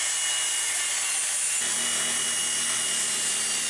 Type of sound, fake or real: real